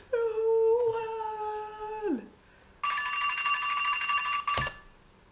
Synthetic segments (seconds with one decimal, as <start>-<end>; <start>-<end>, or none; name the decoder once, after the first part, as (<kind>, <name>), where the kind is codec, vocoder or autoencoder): none